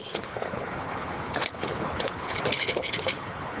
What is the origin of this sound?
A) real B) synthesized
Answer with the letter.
B